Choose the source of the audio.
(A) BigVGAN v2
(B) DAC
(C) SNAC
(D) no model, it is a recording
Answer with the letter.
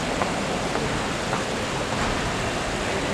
D